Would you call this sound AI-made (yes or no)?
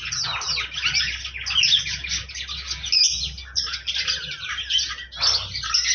no